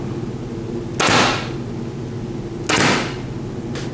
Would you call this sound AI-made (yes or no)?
no